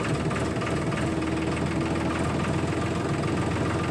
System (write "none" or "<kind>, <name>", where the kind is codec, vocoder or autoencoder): none